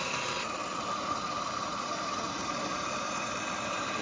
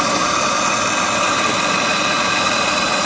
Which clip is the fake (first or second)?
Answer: first